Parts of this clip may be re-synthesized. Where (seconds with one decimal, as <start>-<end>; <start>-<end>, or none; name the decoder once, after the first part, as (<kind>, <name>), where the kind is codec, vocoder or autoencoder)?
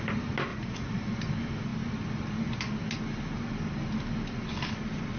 0.5-1.0 (vocoder, Vocos)